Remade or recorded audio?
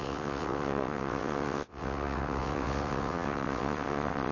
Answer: remade